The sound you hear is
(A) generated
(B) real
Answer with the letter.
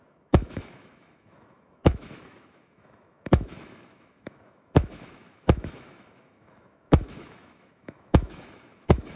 A